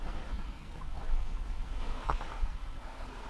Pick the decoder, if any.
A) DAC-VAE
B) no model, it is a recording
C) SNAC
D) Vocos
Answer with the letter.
C